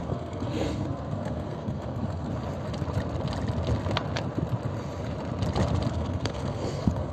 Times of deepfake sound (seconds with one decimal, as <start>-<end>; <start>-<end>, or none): 0.0-2.3; 5.9-7.1